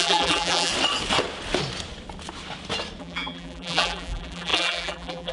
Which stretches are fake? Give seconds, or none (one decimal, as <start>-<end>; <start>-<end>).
0.0-0.7; 3.0-5.3